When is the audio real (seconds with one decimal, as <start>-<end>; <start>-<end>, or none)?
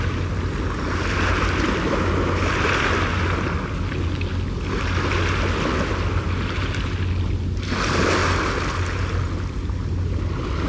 0.0-10.7